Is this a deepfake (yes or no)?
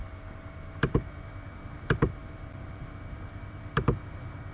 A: yes